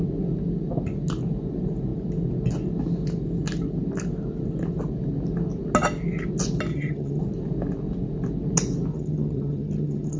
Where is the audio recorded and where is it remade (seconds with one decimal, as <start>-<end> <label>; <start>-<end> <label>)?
0.0-6.7 recorded; 6.7-7.2 remade; 7.2-8.9 recorded; 8.9-10.2 remade